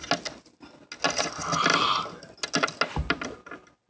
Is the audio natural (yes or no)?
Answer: yes